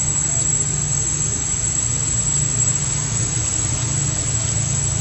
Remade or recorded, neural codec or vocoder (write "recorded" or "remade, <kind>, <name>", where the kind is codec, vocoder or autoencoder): recorded